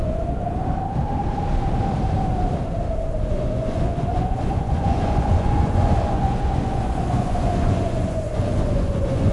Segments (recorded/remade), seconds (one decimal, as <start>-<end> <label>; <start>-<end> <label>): 0.0-0.4 remade; 0.4-3.3 recorded; 3.3-9.3 remade